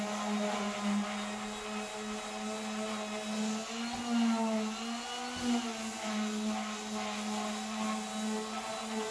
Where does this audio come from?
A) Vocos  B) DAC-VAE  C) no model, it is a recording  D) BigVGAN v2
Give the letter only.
C